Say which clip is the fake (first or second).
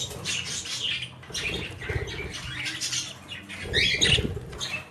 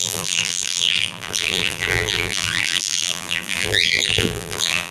second